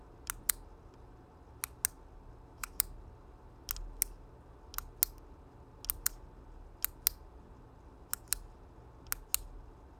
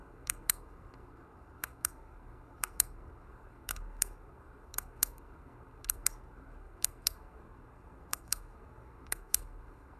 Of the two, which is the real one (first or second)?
first